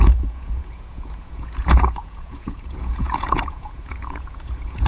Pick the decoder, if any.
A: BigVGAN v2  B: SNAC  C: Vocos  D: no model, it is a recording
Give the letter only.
C